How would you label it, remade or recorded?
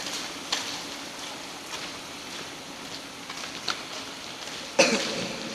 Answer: recorded